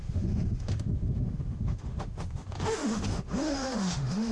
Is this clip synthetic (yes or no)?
yes